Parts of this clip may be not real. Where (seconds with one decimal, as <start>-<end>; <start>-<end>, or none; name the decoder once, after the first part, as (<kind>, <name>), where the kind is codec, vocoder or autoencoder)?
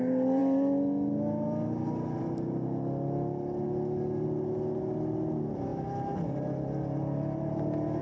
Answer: none